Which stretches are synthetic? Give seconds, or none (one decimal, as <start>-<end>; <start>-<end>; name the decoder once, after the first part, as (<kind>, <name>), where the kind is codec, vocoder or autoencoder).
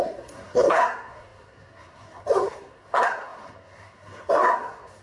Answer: 0.0-5.0 (codec, SNAC)